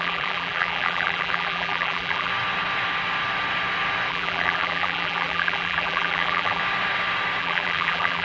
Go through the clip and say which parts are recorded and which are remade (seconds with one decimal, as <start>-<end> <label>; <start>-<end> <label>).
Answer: 0.0-2.3 remade; 2.3-4.1 recorded; 4.1-6.6 remade; 6.6-7.4 recorded; 7.4-8.2 remade